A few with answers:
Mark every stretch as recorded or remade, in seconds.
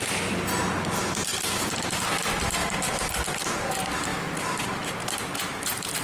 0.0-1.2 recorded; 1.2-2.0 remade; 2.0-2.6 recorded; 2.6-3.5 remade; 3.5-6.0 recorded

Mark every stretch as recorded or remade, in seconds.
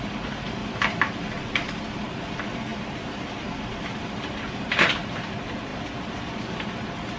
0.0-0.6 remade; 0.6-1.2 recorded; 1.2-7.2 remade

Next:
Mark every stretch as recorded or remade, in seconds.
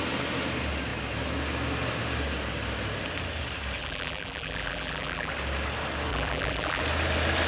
0.0-3.8 recorded; 3.8-5.3 remade; 5.3-6.1 recorded; 6.1-6.8 remade; 6.8-7.5 recorded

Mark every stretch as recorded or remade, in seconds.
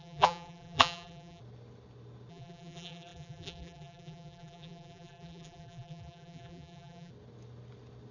0.0-1.4 remade; 1.4-2.3 recorded; 2.3-7.1 remade; 7.1-8.1 recorded